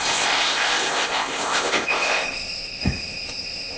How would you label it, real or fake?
fake